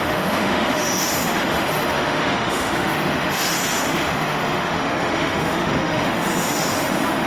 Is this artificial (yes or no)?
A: yes